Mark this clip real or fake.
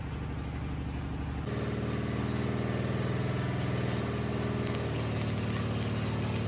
real